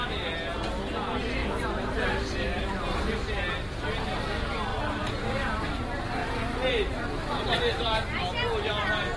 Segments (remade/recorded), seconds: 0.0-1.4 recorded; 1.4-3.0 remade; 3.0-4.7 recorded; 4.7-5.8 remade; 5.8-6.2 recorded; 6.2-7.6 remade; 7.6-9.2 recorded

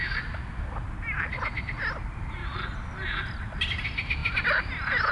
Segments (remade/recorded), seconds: 0.0-2.4 remade; 2.4-3.2 recorded; 3.2-4.2 remade; 4.2-5.1 recorded

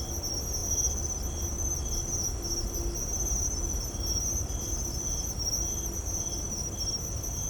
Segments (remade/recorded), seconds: 0.0-7.5 recorded

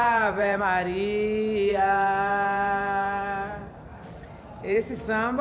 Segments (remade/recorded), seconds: 0.0-0.6 remade; 0.6-1.7 recorded; 1.7-4.9 remade; 4.9-5.4 recorded

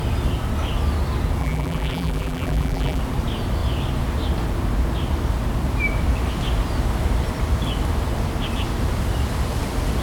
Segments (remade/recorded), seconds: 0.0-1.4 recorded; 1.4-3.0 remade; 3.0-10.0 recorded

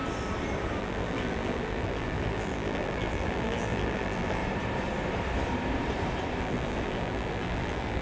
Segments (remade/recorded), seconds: 0.0-0.8 recorded; 0.8-4.4 remade; 4.4-6.4 recorded; 6.4-8.0 remade

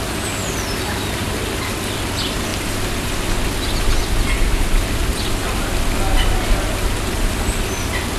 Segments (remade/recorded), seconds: 0.0-8.2 recorded

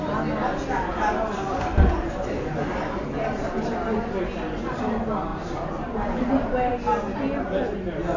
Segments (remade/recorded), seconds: 0.0-2.7 recorded; 2.7-3.8 remade; 3.8-5.3 recorded; 5.3-6.3 remade; 6.3-8.2 recorded